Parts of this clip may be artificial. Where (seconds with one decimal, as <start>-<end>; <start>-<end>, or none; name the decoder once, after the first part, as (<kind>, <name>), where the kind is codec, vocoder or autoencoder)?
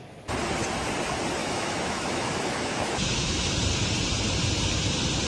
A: 1.4-3.5 (autoencoder, DAC-VAE)